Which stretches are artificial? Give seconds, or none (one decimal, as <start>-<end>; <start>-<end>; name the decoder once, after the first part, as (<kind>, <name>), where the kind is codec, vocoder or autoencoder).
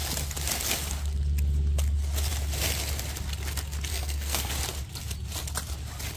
3.9-4.5 (codec, SNAC)